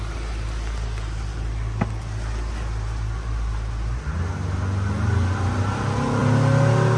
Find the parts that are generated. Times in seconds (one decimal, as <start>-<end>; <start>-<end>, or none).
none

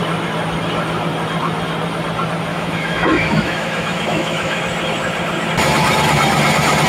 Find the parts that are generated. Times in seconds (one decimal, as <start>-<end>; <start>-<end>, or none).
2.5-4.6

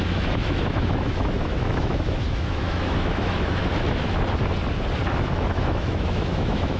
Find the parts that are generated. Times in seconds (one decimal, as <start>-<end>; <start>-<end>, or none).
0.0-3.6; 5.1-6.8

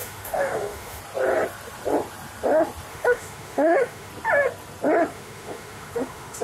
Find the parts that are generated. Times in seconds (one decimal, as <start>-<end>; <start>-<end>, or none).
0.0-1.0; 2.9-4.1; 5.1-6.4

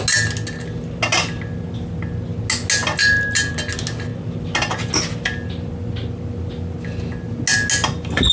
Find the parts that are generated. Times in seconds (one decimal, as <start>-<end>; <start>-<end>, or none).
none